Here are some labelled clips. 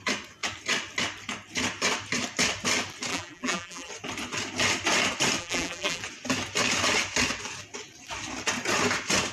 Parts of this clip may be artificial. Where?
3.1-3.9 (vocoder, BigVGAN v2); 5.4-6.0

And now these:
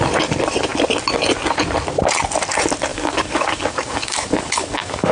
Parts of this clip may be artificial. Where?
2.9-5.1 (codec, DAC)